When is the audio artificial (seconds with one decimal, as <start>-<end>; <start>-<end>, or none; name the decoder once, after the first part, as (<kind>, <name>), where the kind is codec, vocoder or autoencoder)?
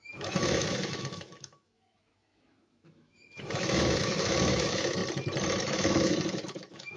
0.0-5.0 (autoencoder, DAC-VAE); 5.6-7.0